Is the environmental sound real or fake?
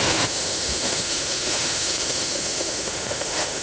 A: fake